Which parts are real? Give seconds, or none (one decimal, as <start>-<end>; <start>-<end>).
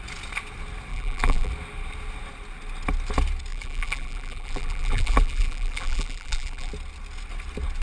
0.0-0.9; 1.5-3.5; 6.7-7.8